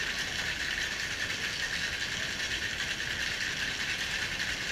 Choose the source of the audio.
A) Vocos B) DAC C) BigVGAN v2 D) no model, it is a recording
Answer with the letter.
D